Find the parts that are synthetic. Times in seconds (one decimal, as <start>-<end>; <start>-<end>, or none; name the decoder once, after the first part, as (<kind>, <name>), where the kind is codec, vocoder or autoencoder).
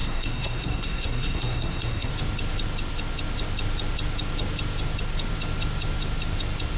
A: 0.0-2.1 (codec, SNAC)